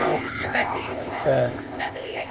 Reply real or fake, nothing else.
fake